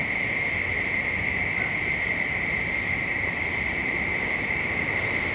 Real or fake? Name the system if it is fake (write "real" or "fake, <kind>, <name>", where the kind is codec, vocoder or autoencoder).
real